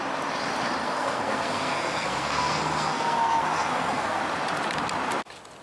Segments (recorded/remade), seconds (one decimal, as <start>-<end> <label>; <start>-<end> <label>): 0.0-0.8 recorded; 0.8-4.2 remade; 4.2-5.6 recorded